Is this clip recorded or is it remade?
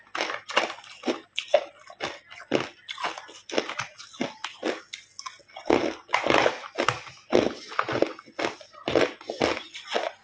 recorded